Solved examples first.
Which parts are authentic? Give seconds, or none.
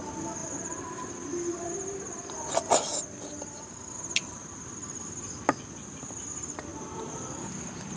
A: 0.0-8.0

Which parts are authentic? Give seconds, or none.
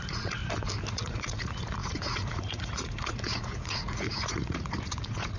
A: 0.4-0.9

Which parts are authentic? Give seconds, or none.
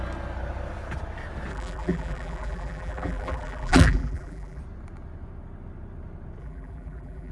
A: 0.0-1.5; 4.6-6.4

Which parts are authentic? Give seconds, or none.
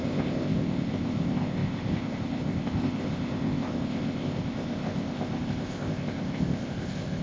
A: none